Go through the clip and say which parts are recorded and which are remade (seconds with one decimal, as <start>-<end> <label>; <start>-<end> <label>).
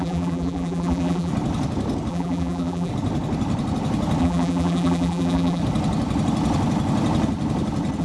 0.0-1.3 remade; 1.3-2.1 recorded; 2.1-2.9 remade; 2.9-4.2 recorded; 4.2-5.6 remade; 5.6-8.0 recorded